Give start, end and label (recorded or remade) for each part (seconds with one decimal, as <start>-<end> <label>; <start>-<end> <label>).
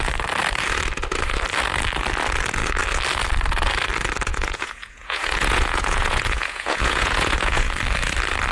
0.0-4.3 recorded; 4.3-7.7 remade; 7.7-8.5 recorded